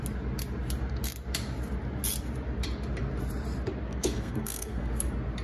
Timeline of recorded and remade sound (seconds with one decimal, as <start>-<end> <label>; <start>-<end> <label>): 0.0-3.9 recorded; 3.9-4.9 remade; 4.9-5.4 recorded